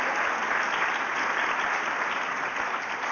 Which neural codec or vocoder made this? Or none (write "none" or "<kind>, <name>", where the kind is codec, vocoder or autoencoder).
none